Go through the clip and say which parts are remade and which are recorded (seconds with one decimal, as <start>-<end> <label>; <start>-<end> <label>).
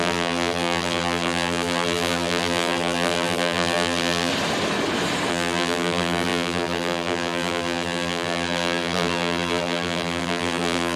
0.0-4.3 remade; 4.3-5.3 recorded; 5.3-11.0 remade